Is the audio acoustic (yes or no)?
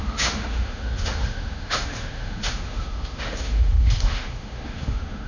no